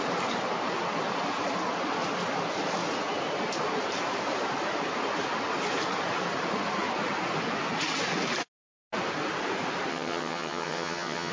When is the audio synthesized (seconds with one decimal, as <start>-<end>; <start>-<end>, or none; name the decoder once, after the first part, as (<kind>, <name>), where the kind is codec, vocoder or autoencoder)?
9.9-11.3 (vocoder, HiFi-GAN)